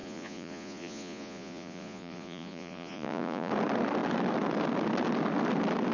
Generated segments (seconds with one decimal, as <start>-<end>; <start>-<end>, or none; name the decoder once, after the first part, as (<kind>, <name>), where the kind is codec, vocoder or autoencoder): 0.0-3.5 (vocoder, Vocos)